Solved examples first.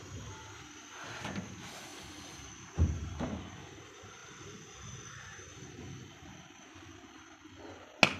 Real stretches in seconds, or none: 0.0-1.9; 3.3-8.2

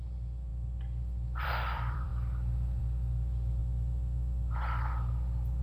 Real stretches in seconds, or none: 2.1-2.8; 3.6-5.6

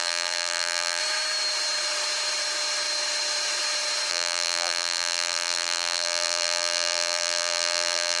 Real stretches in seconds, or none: 1.0-4.1

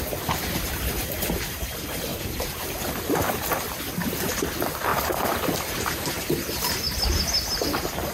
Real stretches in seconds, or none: 0.0-2.1; 2.7-4.9; 6.1-8.1

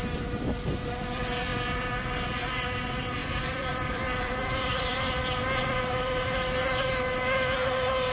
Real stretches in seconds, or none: 0.0-3.2; 5.0-8.1

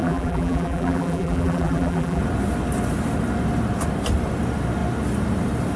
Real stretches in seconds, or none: 2.2-5.8